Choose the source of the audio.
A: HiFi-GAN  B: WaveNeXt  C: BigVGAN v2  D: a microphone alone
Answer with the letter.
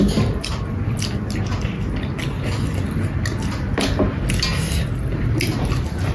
D